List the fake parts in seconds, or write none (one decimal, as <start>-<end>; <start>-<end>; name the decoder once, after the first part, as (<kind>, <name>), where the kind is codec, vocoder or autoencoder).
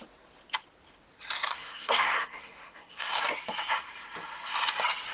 1.5-3.2 (codec, SNAC)